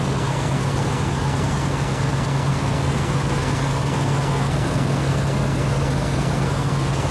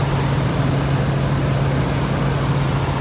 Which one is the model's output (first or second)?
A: first